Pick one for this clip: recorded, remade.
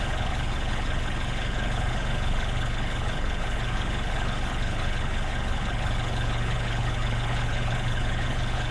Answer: remade